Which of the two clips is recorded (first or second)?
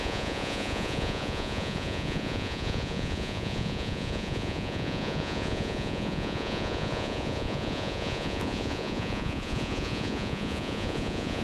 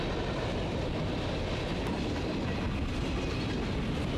second